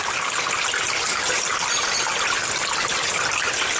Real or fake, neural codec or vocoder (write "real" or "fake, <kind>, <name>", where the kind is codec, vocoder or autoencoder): real